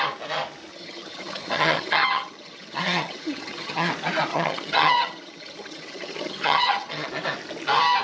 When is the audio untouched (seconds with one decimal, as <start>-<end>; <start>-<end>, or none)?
0.0-0.7; 3.9-4.3; 7.1-8.0